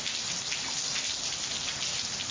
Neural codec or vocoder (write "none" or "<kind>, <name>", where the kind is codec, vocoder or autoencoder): none